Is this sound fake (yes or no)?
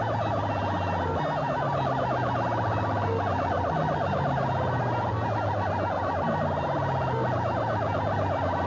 no